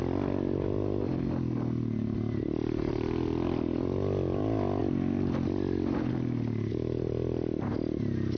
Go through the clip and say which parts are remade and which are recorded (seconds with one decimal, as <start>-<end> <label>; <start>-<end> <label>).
0.0-8.4 recorded

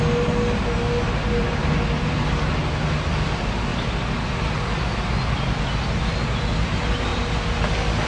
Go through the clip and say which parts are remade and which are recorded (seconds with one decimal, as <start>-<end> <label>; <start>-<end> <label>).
0.0-8.1 recorded